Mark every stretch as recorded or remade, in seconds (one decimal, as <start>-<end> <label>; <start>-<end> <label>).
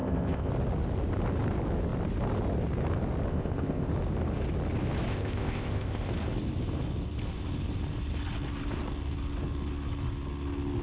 0.0-0.5 remade; 0.5-3.3 recorded; 3.3-3.9 remade; 3.9-5.1 recorded; 5.1-6.1 remade; 6.1-10.8 recorded